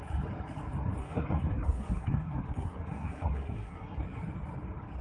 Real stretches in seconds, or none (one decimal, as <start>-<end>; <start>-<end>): 0.0-1.0; 4.0-5.0